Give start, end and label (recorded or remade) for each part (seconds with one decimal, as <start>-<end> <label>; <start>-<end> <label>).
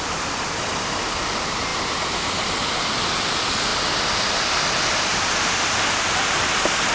0.0-6.9 recorded